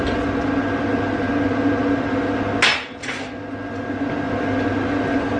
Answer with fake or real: real